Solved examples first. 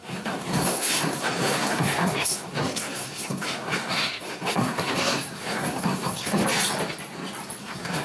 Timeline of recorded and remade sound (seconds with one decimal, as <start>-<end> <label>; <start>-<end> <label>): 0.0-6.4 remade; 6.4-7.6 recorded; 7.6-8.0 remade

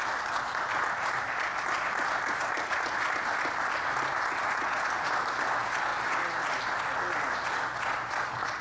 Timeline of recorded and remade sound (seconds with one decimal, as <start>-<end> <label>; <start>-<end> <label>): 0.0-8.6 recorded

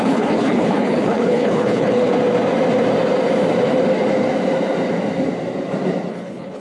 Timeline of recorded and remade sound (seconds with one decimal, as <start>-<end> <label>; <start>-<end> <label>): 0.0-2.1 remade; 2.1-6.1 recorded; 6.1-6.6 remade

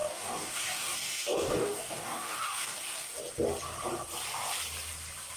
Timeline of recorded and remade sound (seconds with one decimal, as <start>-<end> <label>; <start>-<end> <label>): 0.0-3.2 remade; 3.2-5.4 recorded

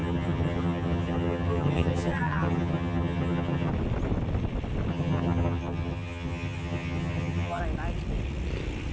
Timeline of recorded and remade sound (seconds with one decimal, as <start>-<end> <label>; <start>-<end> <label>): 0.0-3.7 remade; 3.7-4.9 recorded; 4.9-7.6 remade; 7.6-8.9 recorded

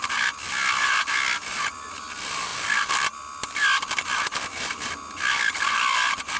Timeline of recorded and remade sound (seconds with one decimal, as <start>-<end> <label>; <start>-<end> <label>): 0.0-6.4 recorded

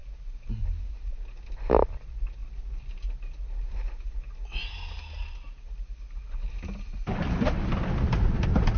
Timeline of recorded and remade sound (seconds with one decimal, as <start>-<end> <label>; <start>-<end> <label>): 0.0-8.8 recorded